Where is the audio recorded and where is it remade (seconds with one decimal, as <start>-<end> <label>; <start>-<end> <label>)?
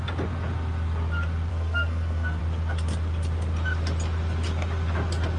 0.0-1.5 recorded; 1.5-2.4 remade; 2.4-5.4 recorded